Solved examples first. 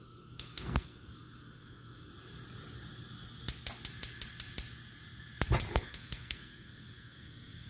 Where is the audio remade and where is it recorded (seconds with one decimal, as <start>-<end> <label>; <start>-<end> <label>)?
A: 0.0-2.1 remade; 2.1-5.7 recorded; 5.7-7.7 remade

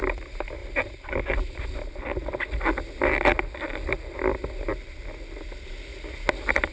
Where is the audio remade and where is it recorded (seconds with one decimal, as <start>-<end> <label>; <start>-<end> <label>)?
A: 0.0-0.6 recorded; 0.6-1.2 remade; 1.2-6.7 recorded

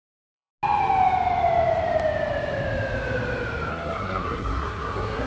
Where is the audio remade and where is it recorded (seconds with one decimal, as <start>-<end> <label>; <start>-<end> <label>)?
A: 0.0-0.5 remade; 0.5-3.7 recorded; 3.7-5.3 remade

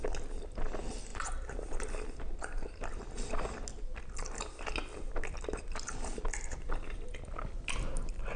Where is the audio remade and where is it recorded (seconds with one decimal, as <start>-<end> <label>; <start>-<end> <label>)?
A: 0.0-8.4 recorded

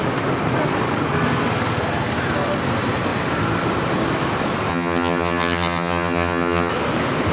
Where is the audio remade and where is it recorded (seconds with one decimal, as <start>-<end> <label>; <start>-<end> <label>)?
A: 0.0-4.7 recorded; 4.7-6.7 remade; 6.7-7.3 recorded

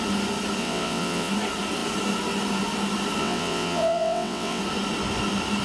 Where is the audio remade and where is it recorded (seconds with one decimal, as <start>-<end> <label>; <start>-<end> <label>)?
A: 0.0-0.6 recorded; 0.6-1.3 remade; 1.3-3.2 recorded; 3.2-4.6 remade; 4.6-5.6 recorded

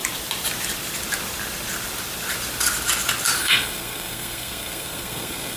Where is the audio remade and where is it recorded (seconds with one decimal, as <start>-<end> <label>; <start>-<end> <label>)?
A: 0.0-3.4 recorded; 3.4-5.6 remade

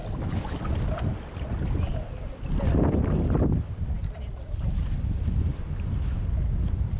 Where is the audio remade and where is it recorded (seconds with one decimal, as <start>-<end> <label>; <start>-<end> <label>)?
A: 0.0-7.0 recorded